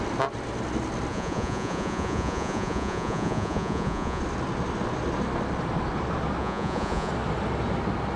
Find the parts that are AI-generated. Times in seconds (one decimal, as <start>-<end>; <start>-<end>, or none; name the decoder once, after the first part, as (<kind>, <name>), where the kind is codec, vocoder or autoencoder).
1.1-4.2 (vocoder, Vocos); 6.4-7.1